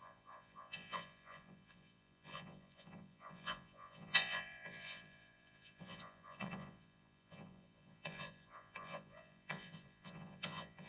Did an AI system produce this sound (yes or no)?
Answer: yes